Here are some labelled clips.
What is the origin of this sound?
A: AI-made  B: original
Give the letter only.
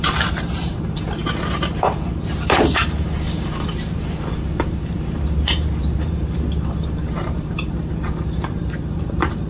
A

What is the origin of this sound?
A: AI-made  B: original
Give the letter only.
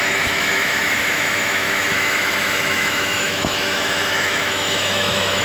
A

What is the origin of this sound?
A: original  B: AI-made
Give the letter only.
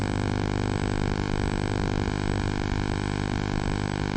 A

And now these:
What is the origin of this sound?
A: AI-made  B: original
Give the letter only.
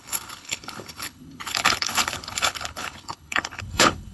A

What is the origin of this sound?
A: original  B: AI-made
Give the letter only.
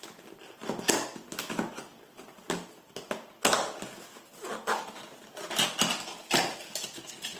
A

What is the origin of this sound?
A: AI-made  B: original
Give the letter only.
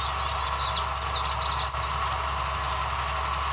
B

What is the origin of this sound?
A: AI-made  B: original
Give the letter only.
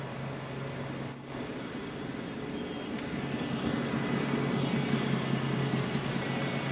B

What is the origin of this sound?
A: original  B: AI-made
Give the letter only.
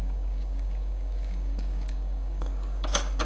B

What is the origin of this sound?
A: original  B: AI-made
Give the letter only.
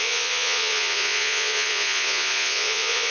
B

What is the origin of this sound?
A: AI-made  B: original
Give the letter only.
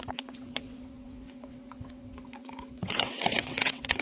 A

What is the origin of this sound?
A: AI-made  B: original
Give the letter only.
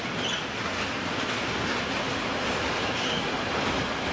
B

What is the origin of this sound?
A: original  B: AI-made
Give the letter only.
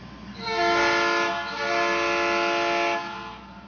A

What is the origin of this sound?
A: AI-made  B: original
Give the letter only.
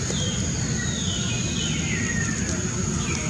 B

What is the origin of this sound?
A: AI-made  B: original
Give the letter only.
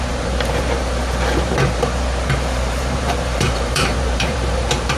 A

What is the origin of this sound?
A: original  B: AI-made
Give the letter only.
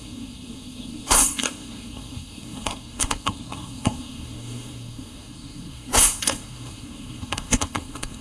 B